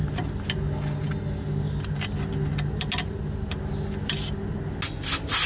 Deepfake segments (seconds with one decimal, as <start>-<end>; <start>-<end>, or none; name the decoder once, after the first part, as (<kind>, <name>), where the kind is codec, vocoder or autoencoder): none